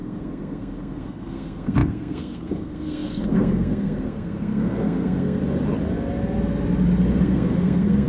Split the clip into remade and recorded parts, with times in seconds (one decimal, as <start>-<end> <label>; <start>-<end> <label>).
0.0-5.4 remade; 5.4-7.2 recorded; 7.2-8.1 remade